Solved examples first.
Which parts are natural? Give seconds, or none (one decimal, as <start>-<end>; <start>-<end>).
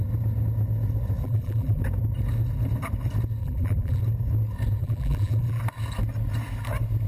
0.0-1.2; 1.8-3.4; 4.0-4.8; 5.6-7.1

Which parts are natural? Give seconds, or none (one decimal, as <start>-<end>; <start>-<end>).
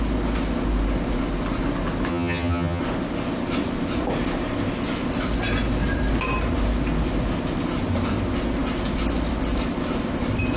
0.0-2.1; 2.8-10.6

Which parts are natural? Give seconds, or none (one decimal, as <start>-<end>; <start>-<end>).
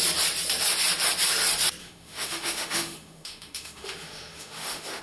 0.0-1.8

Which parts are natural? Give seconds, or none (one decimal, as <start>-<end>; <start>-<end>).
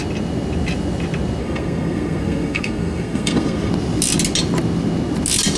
0.0-1.4; 3.7-5.6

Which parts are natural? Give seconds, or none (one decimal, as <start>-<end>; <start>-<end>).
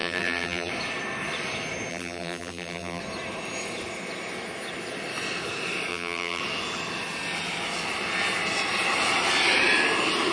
0.7-1.9; 3.0-5.9; 6.4-10.3